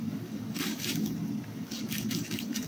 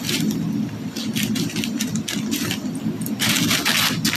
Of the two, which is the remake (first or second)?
first